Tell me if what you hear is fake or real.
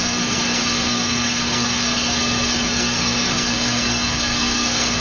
fake